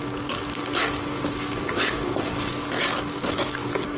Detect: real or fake fake